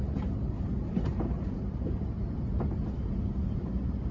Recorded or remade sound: remade